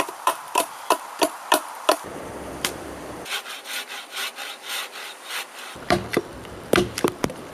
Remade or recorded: remade